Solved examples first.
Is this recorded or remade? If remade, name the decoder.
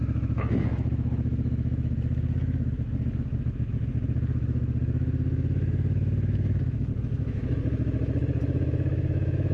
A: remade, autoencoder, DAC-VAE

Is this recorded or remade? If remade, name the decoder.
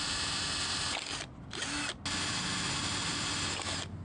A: recorded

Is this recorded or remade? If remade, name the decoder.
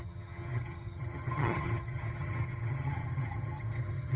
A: remade, vocoder, HiFi-GAN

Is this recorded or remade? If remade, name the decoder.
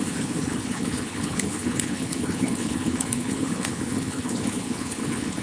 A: remade, codec, HILCodec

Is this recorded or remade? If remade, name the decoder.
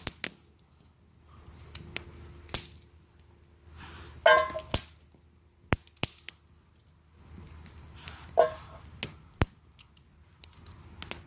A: recorded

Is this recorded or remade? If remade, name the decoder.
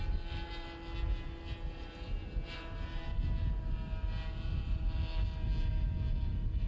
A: recorded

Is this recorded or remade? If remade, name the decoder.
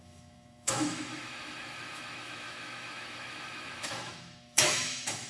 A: remade, autoencoder, DAC-VAE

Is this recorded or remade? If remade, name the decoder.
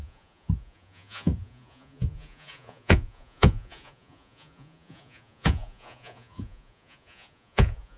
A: remade, vocoder, Vocos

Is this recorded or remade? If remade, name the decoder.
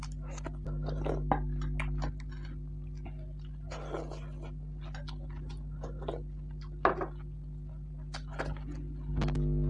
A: recorded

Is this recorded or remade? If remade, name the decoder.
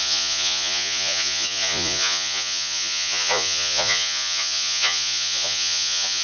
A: remade, vocoder, Vocos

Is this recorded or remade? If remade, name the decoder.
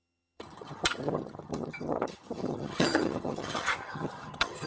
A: remade, vocoder, HiFi-GAN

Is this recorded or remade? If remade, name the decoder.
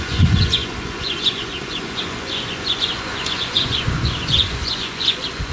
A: remade, vocoder, Vocos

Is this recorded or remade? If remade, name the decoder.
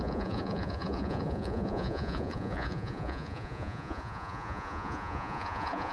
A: remade, vocoder, Vocos